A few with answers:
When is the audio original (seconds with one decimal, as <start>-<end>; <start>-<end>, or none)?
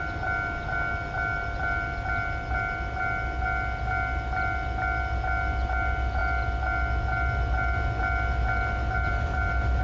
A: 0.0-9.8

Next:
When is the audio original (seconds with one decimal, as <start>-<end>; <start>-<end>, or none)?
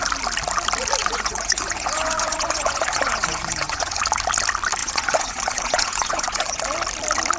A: 0.0-1.0; 4.0-4.8; 6.6-7.4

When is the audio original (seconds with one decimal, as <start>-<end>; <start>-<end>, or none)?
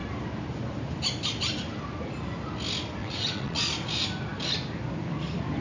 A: 0.0-3.0; 3.7-5.6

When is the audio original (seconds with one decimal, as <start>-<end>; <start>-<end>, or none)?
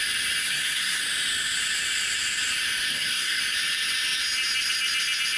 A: 0.0-0.4; 1.0-2.9; 3.4-5.4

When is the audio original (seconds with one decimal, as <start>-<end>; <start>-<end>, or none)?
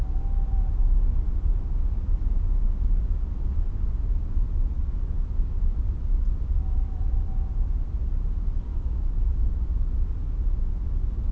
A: 0.0-8.7; 9.5-11.3